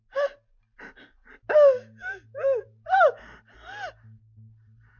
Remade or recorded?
recorded